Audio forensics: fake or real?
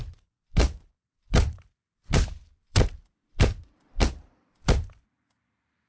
fake